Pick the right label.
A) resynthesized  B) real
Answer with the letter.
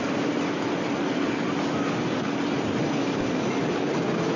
B